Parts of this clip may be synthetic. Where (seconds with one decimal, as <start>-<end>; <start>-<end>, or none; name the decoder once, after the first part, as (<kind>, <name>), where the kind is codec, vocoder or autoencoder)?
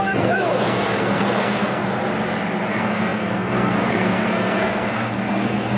0.0-1.8 (codec, SNAC); 2.7-5.8